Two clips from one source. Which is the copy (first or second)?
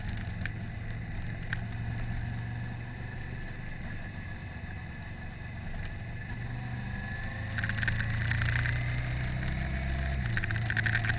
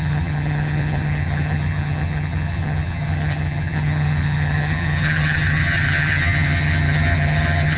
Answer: second